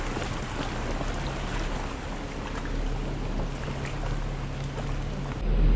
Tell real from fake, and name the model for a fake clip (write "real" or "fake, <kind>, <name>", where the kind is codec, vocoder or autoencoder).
real